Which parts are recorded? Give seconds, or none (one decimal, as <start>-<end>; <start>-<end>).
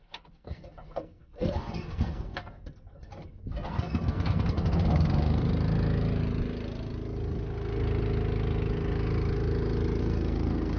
5.5-10.0